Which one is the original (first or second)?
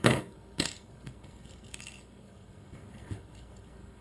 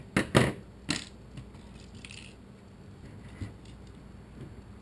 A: second